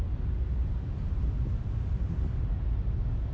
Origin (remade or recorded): recorded